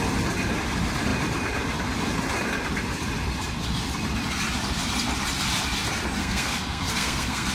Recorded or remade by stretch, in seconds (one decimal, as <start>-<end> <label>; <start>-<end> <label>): 0.0-6.2 recorded; 6.2-7.5 remade